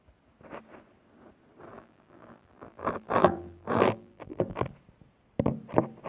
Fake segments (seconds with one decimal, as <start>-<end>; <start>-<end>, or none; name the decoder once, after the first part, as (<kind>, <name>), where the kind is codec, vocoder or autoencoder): 1.7-4.7 (vocoder, BigVGAN v2)